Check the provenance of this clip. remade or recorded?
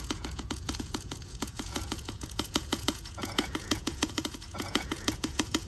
remade